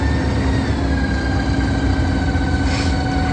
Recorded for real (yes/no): yes